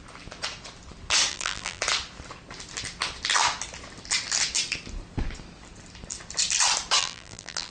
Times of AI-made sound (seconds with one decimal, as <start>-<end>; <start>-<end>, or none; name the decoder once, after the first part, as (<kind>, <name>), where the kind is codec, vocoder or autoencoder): 1.3-1.8 (vocoder, BigVGAN v2); 7.0-7.7